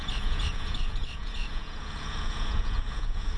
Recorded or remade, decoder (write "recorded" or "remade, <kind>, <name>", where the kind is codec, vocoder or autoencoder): remade, vocoder, Vocos